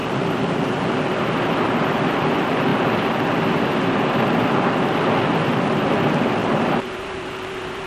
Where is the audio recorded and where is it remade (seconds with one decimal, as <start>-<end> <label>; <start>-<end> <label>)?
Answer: 0.0-1.0 remade; 1.0-6.4 recorded; 6.4-7.3 remade; 7.3-7.9 recorded